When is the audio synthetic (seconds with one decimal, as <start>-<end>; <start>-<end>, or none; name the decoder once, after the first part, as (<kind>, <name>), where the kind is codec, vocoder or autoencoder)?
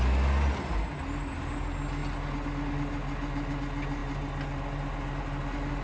none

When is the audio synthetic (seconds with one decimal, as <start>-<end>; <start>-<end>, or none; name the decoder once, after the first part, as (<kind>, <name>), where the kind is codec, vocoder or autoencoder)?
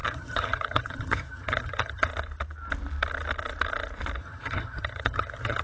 0.0-2.1 (vocoder, HiFi-GAN); 4.2-5.6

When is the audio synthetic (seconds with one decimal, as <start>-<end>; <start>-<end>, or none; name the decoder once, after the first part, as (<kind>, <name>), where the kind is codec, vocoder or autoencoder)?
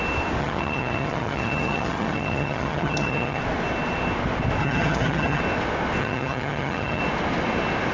0.4-3.4 (vocoder, HiFi-GAN); 4.6-5.4; 6.0-7.0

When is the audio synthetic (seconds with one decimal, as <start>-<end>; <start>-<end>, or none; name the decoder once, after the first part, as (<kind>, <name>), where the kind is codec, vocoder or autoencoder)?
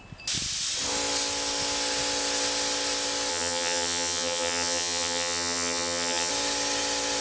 3.3-6.3 (vocoder, HiFi-GAN)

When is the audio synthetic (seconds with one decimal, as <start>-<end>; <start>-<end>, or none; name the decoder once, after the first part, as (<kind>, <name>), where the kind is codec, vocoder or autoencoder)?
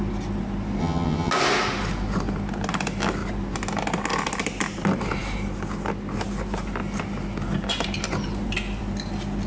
0.8-1.3 (vocoder, HiFi-GAN)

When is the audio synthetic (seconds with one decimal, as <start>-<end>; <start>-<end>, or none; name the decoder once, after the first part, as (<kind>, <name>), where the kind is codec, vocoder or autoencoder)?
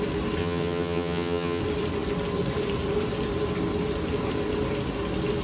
0.4-1.6 (vocoder, HiFi-GAN)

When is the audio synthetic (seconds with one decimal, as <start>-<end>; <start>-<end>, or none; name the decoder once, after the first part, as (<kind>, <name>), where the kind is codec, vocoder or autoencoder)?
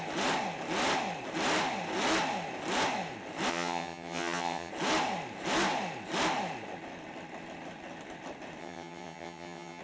3.5-4.7 (vocoder, HiFi-GAN); 8.6-9.8